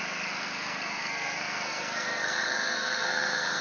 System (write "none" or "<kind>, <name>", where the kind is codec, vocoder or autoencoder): codec, SNAC